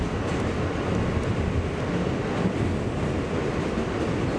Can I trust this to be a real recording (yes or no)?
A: yes